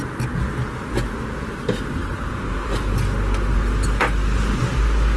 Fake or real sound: real